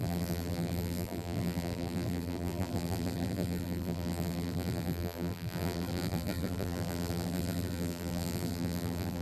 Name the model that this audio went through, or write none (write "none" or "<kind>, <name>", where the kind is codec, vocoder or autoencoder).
vocoder, BigVGAN v2